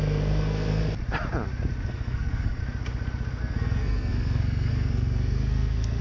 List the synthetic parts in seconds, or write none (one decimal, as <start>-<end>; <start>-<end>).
0.0-0.8; 1.9-2.6; 3.4-6.0